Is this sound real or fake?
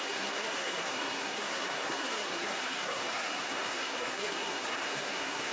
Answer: fake